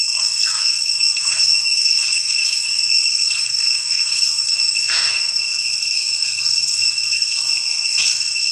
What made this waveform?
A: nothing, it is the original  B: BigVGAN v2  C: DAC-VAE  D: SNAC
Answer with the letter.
D